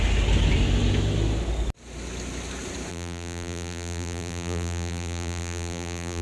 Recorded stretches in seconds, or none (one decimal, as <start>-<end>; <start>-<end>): 0.0-2.9